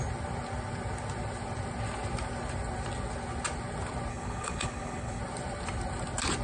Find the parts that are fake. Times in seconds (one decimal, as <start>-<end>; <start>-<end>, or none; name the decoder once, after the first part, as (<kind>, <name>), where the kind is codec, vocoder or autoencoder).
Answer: 4.1-5.2 (codec, HILCodec)